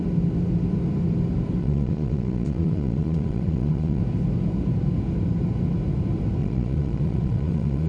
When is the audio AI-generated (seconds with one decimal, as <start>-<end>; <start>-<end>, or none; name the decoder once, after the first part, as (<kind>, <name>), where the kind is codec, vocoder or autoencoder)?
1.6-4.0 (vocoder, Vocos); 6.4-7.9